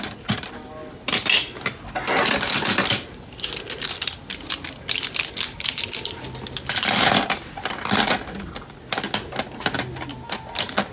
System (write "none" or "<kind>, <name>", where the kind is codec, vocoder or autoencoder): none